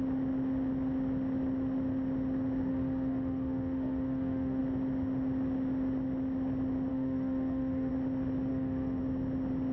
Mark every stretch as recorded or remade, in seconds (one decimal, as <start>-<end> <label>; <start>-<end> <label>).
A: 0.0-2.7 recorded; 2.7-4.6 remade; 4.6-6.9 recorded; 6.9-7.9 remade; 7.9-8.5 recorded; 8.5-9.0 remade; 9.0-9.7 recorded